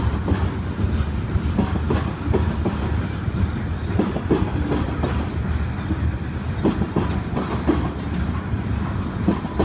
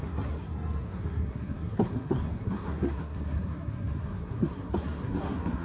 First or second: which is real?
first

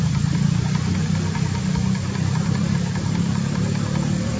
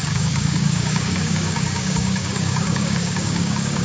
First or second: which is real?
first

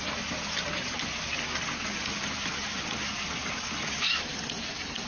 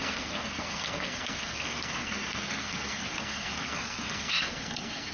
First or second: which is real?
first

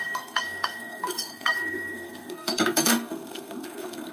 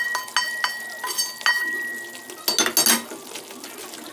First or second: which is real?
second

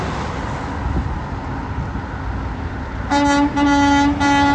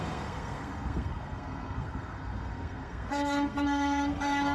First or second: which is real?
first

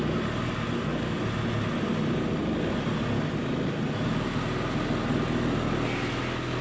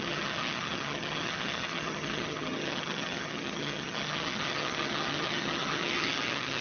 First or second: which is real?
first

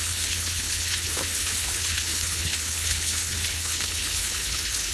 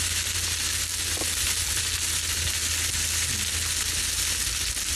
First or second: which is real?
second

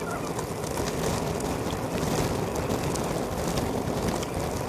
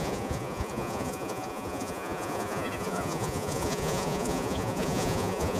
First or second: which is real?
first